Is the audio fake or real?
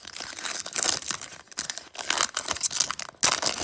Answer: real